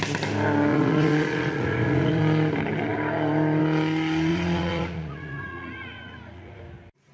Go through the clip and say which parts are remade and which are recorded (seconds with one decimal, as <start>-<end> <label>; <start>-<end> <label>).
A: 0.0-0.7 recorded; 0.7-2.2 remade; 2.2-4.3 recorded; 4.3-6.6 remade; 6.6-7.1 recorded